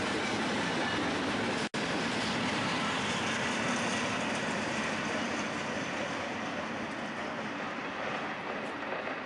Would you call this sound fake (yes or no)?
no